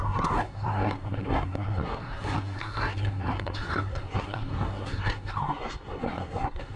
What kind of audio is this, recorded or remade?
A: remade